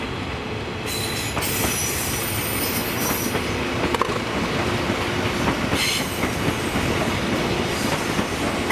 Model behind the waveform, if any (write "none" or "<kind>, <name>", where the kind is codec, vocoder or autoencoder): none